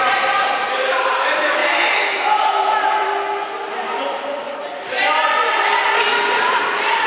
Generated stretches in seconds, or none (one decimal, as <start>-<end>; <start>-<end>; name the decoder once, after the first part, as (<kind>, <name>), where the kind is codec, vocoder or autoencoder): 0.0-3.1 (vocoder, BigVGAN v2); 6.3-7.1

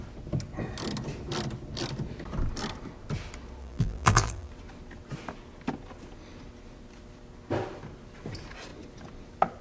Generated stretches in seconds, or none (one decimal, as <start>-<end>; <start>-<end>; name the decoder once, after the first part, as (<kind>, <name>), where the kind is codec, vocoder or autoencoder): 3.6-4.5 (vocoder, BigVGAN v2)